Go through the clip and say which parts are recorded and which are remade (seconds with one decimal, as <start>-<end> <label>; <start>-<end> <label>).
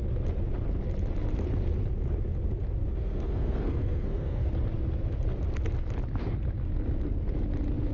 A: 0.0-2.8 recorded; 2.8-4.5 remade; 4.5-7.9 recorded